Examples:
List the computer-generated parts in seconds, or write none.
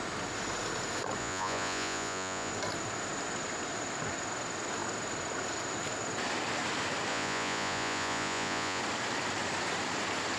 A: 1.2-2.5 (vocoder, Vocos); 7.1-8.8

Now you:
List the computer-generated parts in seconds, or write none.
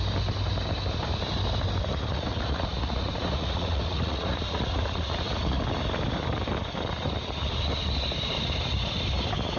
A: 1.9-5.6 (vocoder, Vocos)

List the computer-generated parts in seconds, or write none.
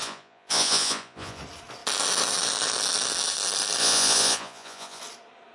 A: 0.0-1.4 (vocoder, Vocos); 3.8-5.0